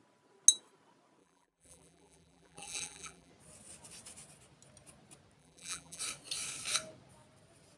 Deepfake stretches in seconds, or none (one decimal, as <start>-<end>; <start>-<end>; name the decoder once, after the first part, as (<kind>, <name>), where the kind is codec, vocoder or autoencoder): 1.2-3.3 (vocoder, BigVGAN v2); 5.4-6.0